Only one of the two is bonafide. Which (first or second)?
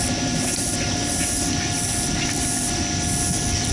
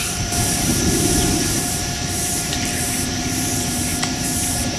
first